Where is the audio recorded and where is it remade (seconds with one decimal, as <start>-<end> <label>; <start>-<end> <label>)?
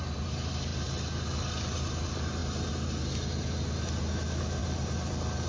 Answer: 0.0-4.6 recorded; 4.6-5.5 remade